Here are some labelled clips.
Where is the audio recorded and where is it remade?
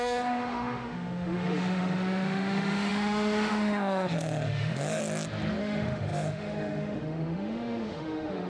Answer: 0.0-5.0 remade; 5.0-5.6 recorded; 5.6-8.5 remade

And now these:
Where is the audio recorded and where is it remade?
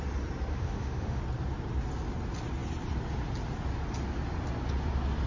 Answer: 0.0-0.5 recorded; 0.5-1.2 remade; 1.2-5.3 recorded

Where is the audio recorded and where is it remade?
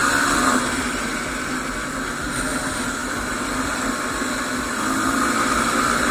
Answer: 0.0-6.1 recorded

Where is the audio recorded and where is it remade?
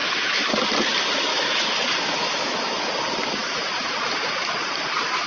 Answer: 0.0-0.5 remade; 0.5-1.3 recorded; 1.3-2.9 remade; 2.9-5.3 recorded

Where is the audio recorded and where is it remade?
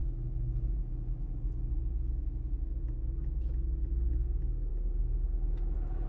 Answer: 0.0-6.1 recorded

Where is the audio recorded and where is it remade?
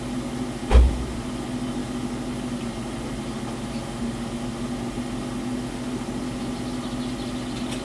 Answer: 0.0-7.8 recorded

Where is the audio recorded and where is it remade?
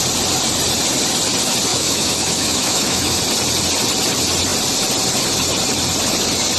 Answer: 0.0-1.7 recorded; 1.7-3.2 remade; 3.2-6.6 recorded